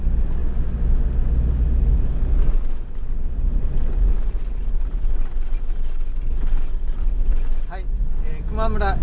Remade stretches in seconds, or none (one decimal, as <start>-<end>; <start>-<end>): none